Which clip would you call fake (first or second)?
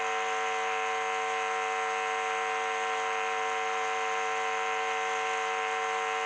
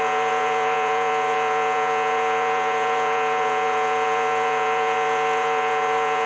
second